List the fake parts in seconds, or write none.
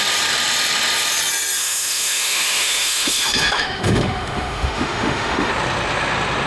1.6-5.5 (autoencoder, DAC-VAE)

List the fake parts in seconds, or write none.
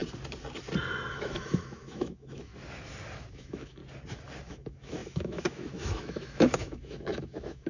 1.1-2.5 (autoencoder, DAC-VAE); 3.3-3.8; 4.5-7.7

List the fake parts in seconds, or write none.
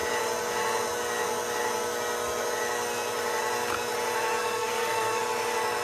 4.4-5.2 (codec, SNAC)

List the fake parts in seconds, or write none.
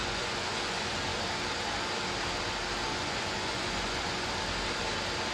0.0-1.0 (vocoder, Vocos); 2.9-4.3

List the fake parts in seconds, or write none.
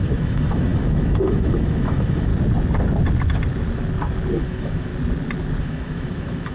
0.0-2.3 (autoencoder, DAC-VAE); 4.4-4.9; 5.6-6.5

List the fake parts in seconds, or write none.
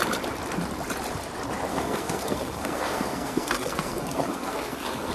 1.7-5.1 (codec, SNAC)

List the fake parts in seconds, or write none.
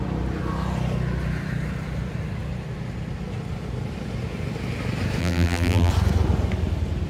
5.2-5.9 (vocoder, BigVGAN v2)